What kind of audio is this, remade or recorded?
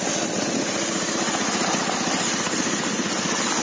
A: recorded